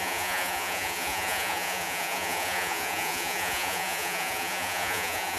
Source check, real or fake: fake